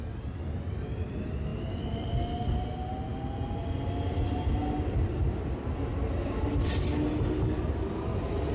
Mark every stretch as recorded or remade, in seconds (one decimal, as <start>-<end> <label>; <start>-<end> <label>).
0.0-8.5 recorded